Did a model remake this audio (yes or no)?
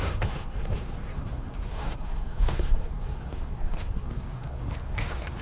yes